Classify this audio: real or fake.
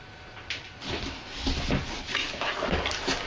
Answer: real